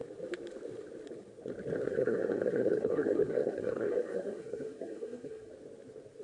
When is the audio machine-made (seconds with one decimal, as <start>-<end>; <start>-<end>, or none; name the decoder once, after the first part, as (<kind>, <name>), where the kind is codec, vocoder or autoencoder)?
1.8-5.5 (codec, SNAC)